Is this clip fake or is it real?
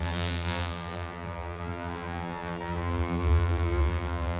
fake